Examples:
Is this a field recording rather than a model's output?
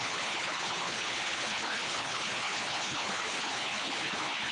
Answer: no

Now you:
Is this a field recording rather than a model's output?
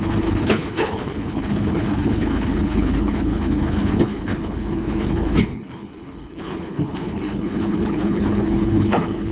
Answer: no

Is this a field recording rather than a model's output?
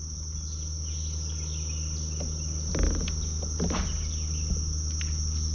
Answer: yes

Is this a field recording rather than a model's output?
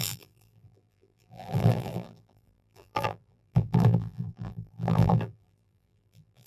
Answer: no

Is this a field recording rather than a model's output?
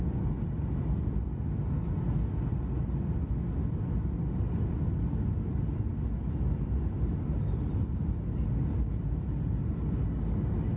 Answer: yes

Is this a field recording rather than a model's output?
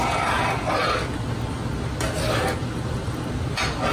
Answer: yes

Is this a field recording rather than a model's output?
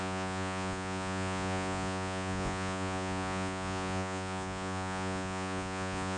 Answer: no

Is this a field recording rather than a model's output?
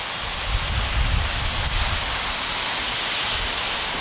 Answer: yes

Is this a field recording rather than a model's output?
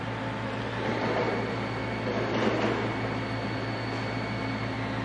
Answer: yes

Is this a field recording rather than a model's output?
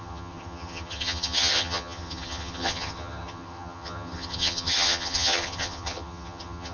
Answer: no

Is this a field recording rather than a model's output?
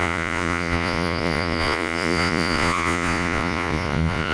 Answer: no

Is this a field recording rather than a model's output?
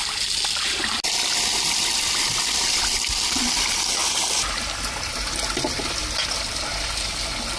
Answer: yes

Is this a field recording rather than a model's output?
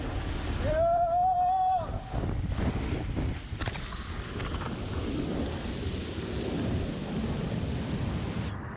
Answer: yes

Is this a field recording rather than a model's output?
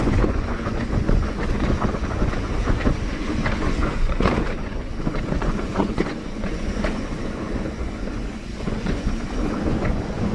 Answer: no